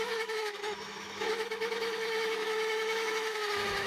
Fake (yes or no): yes